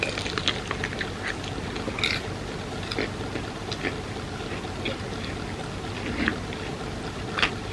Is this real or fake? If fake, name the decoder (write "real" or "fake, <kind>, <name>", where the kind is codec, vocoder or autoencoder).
real